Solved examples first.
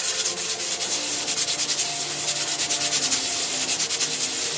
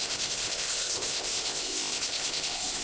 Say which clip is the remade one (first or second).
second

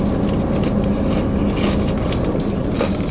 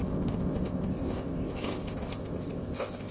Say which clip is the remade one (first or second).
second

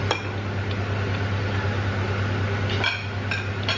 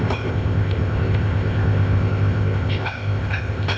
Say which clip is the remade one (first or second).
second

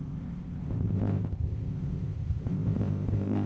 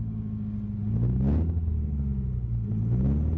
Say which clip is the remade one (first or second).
first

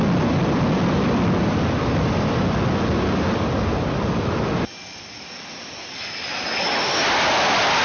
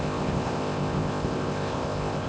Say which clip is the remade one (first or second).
second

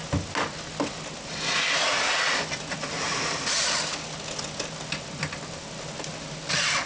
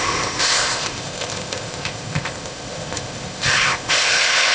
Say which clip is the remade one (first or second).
second